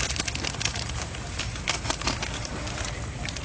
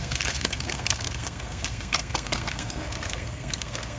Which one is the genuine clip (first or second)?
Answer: first